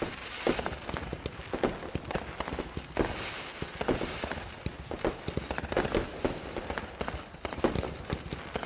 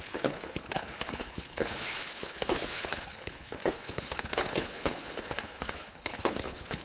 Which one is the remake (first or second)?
second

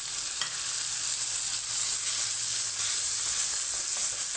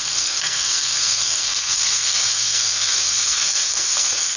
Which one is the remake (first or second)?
second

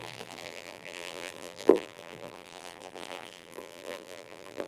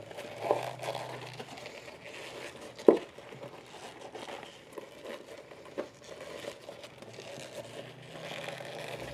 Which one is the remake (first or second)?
first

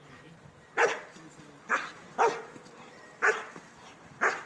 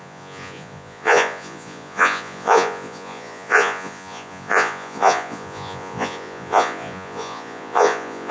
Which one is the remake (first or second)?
second